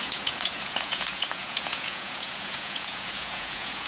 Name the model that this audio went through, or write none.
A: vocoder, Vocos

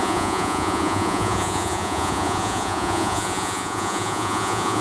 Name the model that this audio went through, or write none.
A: vocoder, Vocos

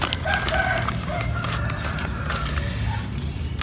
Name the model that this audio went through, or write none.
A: none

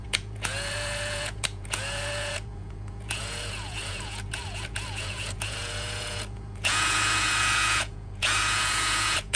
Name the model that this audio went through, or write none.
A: vocoder, Vocos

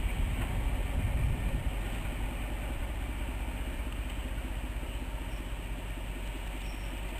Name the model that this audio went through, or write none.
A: none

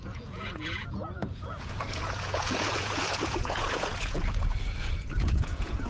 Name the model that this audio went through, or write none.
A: vocoder, Vocos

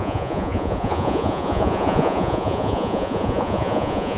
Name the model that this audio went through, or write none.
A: vocoder, Vocos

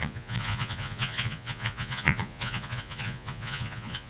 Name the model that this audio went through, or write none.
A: vocoder, Vocos